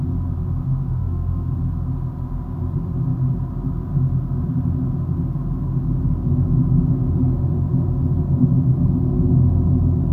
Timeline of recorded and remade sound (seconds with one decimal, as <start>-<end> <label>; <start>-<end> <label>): 0.0-0.6 recorded; 0.6-1.5 remade; 1.5-10.1 recorded